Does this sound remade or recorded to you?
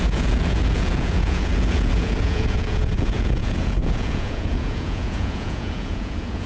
remade